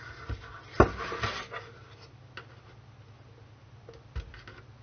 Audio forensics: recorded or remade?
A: recorded